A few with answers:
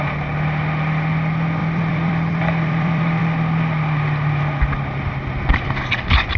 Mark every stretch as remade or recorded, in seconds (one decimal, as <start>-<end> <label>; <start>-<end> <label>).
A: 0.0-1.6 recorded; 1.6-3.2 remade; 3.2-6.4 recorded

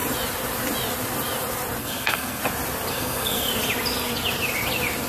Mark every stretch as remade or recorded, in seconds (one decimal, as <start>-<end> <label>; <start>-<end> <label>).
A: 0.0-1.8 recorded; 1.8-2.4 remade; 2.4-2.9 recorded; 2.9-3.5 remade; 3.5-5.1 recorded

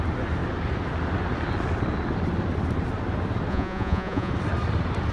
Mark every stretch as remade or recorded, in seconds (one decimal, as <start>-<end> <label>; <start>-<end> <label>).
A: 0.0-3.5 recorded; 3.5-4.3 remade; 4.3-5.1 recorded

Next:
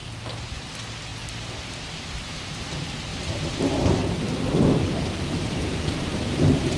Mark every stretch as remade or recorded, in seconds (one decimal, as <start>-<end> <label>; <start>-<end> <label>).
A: 0.0-0.7 remade; 0.7-3.1 recorded; 3.1-6.8 remade

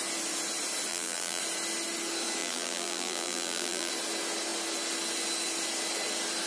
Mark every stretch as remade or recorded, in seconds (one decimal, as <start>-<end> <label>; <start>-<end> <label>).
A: 0.0-0.9 recorded; 0.9-1.4 remade; 1.4-2.4 recorded; 2.4-3.9 remade; 3.9-6.5 recorded